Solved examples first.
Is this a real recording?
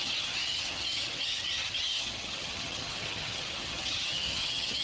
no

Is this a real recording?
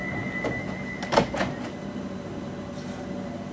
yes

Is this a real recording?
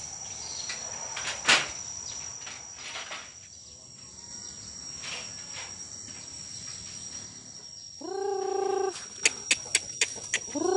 yes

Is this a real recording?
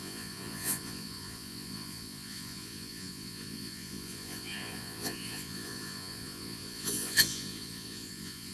no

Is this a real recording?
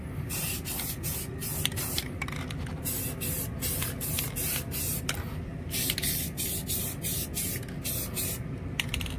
yes